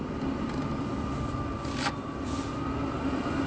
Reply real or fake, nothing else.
real